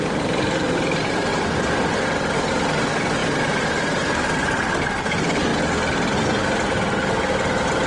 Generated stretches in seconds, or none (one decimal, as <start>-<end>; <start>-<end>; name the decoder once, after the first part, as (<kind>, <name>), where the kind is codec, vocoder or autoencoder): 0.0-1.3 (vocoder, BigVGAN v2); 2.5-5.5